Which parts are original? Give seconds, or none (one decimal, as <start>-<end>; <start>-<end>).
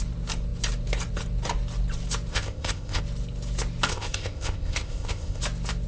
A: 0.0-2.3; 3.0-3.9; 5.4-5.9